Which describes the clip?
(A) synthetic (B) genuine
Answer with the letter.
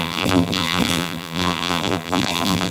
A